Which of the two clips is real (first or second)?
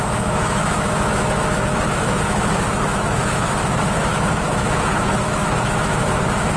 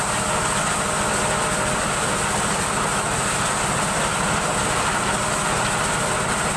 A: second